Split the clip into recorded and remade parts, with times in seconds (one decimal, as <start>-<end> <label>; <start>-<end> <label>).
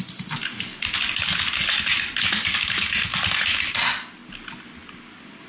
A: 0.0-5.5 recorded